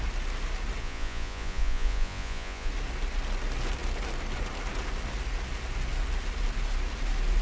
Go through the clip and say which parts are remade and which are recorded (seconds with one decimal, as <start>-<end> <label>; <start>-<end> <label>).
0.0-0.8 recorded; 0.8-2.7 remade; 2.7-7.4 recorded